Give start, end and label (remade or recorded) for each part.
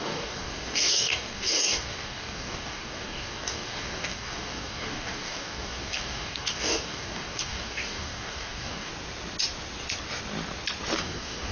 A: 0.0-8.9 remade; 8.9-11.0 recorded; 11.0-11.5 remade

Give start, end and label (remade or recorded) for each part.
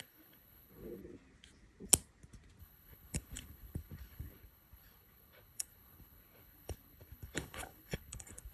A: 0.0-1.0 remade; 1.0-2.6 recorded; 2.6-8.5 remade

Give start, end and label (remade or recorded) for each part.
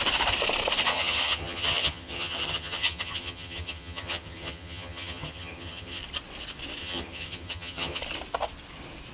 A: 0.0-0.9 recorded; 0.9-6.0 remade; 6.0-6.8 recorded; 6.8-8.0 remade; 8.0-9.1 recorded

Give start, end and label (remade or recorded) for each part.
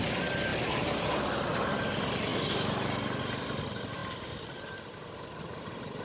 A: 0.0-4.0 recorded; 4.0-6.0 remade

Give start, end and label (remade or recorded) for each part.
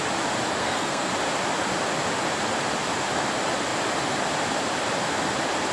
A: 0.0-0.6 recorded; 0.6-1.1 remade; 1.1-5.7 recorded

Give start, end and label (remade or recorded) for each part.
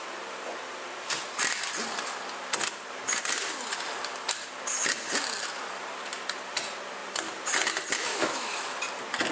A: 0.0-8.1 recorded; 8.1-8.8 remade; 8.8-9.3 recorded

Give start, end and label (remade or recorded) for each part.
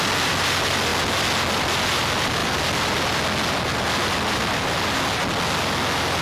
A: 0.0-6.2 recorded